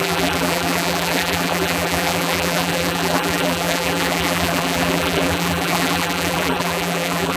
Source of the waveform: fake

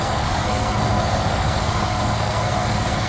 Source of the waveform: fake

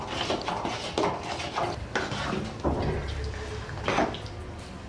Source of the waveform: real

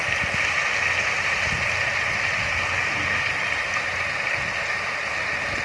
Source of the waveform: real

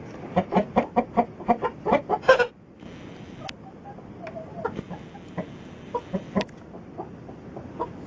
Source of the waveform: real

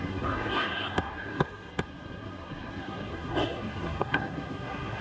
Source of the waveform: fake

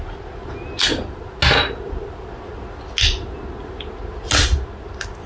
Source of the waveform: real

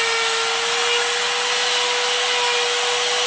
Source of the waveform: real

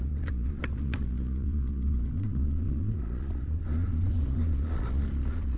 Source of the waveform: fake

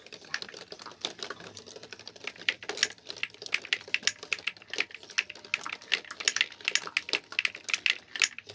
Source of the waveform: real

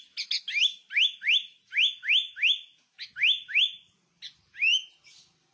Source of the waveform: real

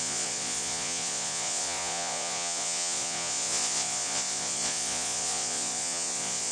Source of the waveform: fake